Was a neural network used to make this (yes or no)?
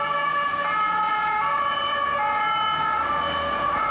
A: no